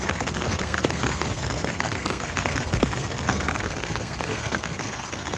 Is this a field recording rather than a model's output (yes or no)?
no